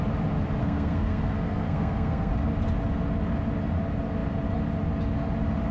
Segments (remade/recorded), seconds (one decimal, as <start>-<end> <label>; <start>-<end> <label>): 0.0-0.6 recorded; 0.6-2.3 remade; 2.3-5.7 recorded